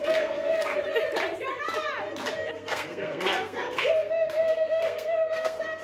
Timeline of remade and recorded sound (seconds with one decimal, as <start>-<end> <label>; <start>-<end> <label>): 0.0-0.7 remade; 0.7-2.5 recorded; 2.5-5.8 remade